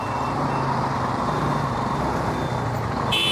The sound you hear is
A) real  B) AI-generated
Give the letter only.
A